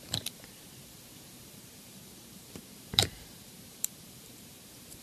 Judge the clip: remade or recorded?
remade